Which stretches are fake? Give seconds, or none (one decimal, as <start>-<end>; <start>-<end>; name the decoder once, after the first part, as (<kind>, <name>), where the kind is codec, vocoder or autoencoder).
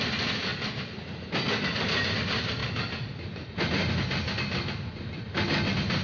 2.6-3.9 (vocoder, BigVGAN v2)